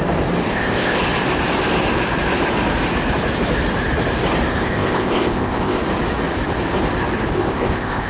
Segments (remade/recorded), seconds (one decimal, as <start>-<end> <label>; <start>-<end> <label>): 0.0-0.5 recorded; 0.5-1.0 remade; 1.0-4.5 recorded; 4.5-5.8 remade; 5.8-7.3 recorded; 7.3-8.1 remade